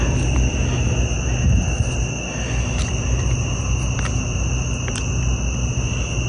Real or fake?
real